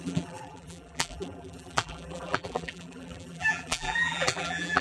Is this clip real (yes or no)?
no